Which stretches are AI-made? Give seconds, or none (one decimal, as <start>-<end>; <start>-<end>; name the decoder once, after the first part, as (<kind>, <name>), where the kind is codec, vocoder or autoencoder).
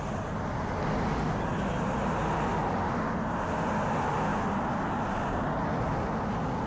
none